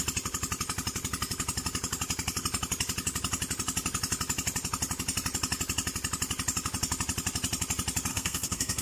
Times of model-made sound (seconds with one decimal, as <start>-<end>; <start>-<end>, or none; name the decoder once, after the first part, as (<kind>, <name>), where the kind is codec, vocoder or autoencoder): 8.1-8.8 (codec, SNAC)

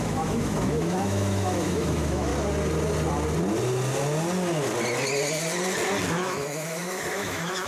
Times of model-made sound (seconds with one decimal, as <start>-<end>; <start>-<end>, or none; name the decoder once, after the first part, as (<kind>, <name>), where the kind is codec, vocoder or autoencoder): 0.0-2.3 (autoencoder, DAC-VAE); 6.1-7.7

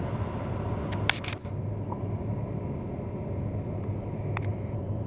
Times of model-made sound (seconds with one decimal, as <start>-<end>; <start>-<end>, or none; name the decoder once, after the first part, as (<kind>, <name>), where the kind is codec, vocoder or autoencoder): 4.5-5.1 (vocoder, BigVGAN v2)

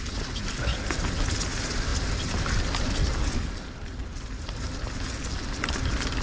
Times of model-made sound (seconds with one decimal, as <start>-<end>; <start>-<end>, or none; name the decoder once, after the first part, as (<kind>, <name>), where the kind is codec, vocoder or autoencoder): none

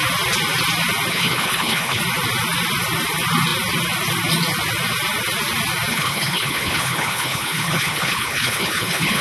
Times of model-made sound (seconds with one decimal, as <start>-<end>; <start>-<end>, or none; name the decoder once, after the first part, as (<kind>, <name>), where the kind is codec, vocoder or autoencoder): 1.1-2.0 (codec, HILCodec); 5.9-9.2